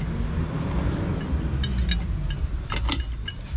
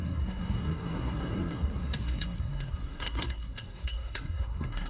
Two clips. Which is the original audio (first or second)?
first